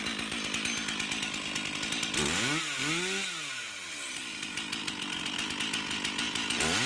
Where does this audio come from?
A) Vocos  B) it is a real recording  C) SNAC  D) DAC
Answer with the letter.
B